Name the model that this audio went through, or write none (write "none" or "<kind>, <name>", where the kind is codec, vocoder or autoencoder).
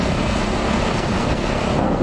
codec, SNAC